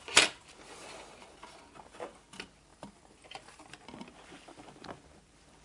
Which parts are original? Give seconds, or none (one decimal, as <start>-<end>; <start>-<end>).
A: 0.0-2.7; 3.7-5.6